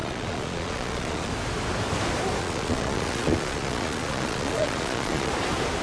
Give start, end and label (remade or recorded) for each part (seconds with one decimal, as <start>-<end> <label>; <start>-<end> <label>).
0.0-1.3 remade; 1.3-2.4 recorded; 2.4-5.3 remade; 5.3-5.8 recorded